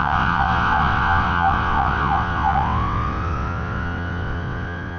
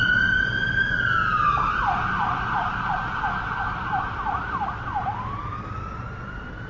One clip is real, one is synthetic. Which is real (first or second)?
second